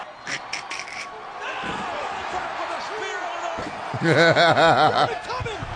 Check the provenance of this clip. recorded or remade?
recorded